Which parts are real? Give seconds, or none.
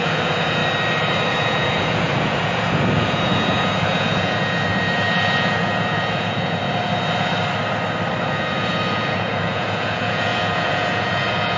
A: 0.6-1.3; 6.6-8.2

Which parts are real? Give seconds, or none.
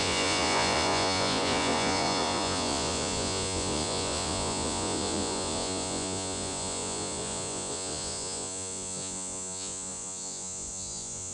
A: none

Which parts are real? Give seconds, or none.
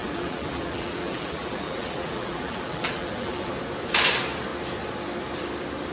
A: 3.5-5.9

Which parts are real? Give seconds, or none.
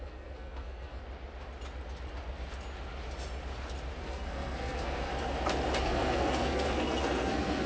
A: 1.0-4.0; 5.1-5.8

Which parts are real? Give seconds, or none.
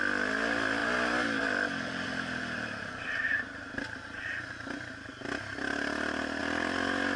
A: 0.0-7.2